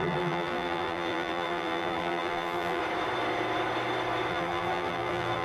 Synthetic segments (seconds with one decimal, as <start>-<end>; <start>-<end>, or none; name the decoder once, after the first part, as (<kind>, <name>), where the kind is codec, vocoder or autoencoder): 0.0-2.8 (vocoder, BigVGAN v2); 4.3-5.4